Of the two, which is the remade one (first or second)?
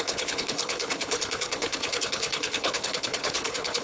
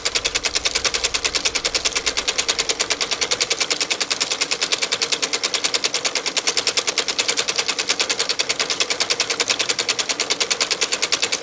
first